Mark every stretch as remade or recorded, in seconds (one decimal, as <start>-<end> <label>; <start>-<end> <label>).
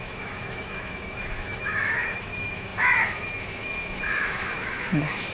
0.0-5.3 remade